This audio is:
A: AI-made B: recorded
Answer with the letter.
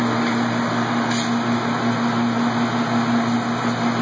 B